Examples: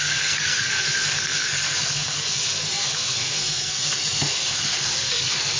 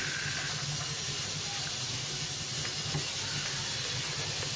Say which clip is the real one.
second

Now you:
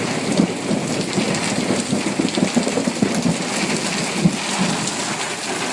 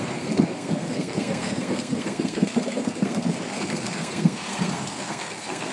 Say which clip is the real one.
first